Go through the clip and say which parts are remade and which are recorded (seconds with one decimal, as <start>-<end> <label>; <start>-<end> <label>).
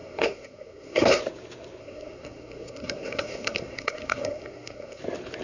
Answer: 0.0-1.2 remade; 1.2-1.8 recorded; 1.8-5.0 remade; 5.0-5.4 recorded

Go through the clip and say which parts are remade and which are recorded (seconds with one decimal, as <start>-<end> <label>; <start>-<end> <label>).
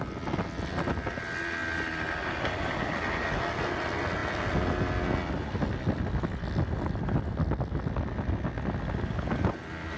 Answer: 0.0-10.0 recorded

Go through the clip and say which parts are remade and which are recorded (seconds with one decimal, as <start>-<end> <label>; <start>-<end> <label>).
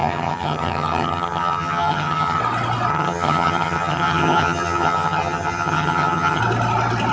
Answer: 0.0-2.4 remade; 2.4-2.9 recorded; 2.9-6.4 remade; 6.4-7.1 recorded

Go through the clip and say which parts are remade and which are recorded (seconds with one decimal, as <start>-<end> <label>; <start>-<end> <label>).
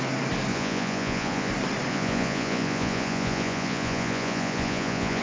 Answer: 0.0-0.5 recorded; 0.5-1.5 remade; 1.5-1.9 recorded; 1.9-5.2 remade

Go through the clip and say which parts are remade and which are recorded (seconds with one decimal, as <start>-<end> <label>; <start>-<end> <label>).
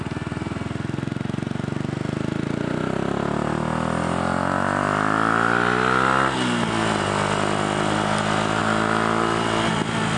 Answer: 0.0-10.2 recorded